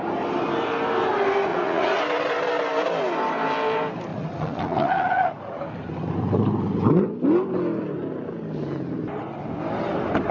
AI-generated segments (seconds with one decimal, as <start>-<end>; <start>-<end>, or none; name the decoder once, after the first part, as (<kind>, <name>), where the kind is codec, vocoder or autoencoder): 1.5-2.0 (vocoder, Vocos); 4.1-5.6